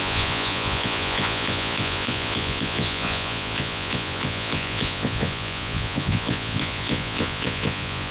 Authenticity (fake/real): fake